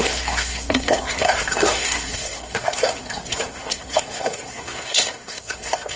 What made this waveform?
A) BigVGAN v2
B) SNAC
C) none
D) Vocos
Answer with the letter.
B